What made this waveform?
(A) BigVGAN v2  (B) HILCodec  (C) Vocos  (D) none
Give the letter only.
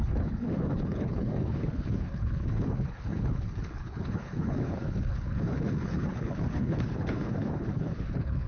B